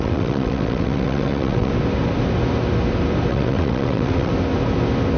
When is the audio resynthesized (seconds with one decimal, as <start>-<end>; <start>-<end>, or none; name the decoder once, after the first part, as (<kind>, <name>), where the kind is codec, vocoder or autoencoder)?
0.0-1.7 (vocoder, WaveNeXt); 3.3-4.3

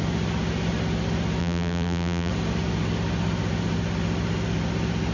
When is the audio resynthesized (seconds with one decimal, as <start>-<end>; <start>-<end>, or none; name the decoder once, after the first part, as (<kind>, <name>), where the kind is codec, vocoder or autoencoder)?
1.4-2.3 (vocoder, BigVGAN v2)